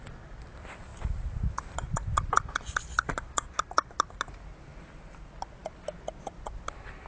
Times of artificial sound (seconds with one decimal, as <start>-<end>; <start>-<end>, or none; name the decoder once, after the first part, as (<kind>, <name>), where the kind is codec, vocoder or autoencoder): none